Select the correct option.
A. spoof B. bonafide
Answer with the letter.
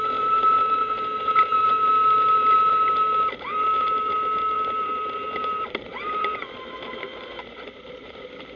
A